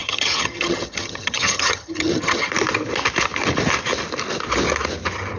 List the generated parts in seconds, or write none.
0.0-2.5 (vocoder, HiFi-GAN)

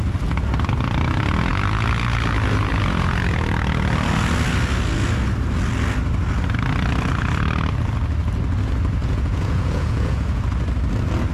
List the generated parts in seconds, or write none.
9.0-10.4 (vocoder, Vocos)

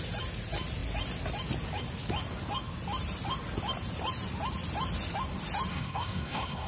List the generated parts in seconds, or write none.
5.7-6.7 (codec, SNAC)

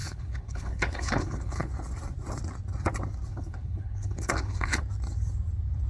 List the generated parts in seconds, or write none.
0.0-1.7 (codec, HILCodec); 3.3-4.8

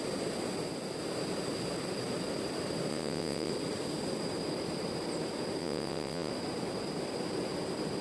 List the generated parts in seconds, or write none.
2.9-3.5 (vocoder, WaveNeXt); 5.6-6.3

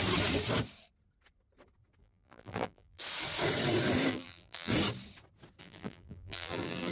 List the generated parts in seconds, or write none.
2.0-3.0 (vocoder, BigVGAN v2); 4.1-4.7; 5.6-6.9

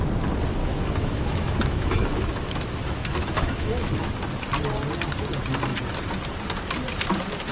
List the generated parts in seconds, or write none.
0.6-4.1 (autoencoder, DAC-VAE)

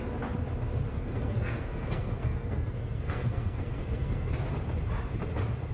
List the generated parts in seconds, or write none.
0.9-4.3 (codec, SNAC)